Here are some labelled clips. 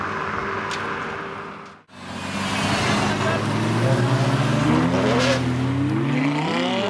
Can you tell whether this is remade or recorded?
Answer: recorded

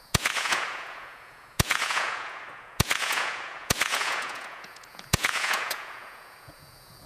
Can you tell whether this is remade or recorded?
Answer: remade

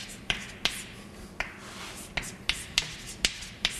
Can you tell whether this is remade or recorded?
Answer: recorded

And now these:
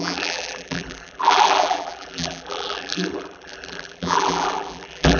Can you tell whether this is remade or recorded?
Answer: remade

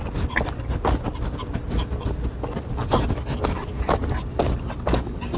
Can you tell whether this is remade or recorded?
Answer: recorded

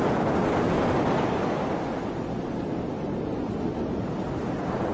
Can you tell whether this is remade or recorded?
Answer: recorded